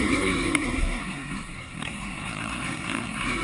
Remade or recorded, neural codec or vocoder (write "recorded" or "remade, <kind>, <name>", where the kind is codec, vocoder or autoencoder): remade, codec, SNAC